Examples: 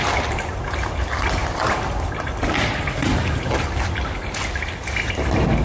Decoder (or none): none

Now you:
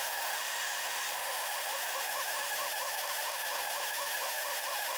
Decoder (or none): autoencoder, DAC-VAE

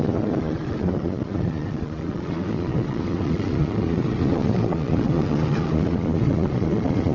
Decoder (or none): vocoder, Vocos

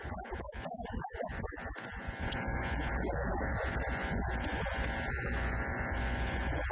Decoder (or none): vocoder, Vocos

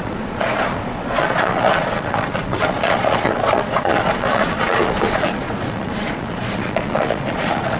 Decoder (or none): vocoder, Vocos